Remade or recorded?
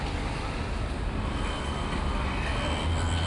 recorded